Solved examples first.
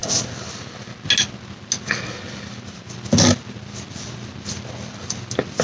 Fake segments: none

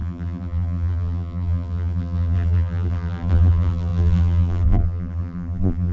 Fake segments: 0.0-5.9 (vocoder, BigVGAN v2)

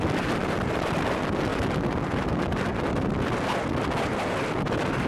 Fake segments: none

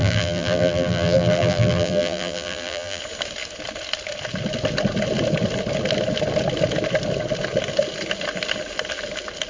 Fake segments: 0.0-3.0 (vocoder, BigVGAN v2)

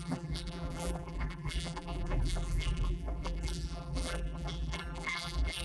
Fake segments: 0.0-5.6 (vocoder, BigVGAN v2)